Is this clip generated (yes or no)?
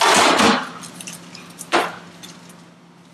no